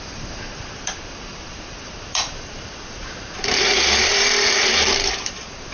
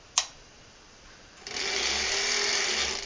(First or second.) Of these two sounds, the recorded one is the second